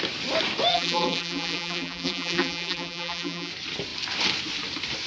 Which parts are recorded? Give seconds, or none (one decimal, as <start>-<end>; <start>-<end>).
0.0-0.7; 3.5-5.1